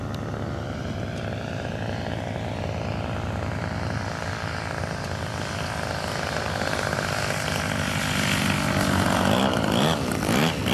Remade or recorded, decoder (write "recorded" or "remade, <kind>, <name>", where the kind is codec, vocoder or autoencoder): recorded